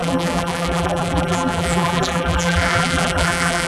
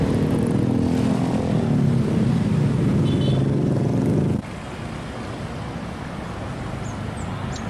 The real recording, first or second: second